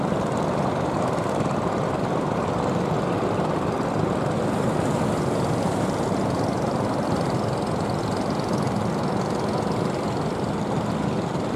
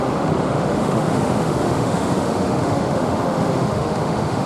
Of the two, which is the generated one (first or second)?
second